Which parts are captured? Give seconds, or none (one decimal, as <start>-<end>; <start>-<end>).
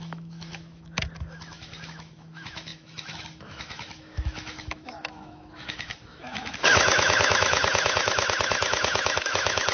none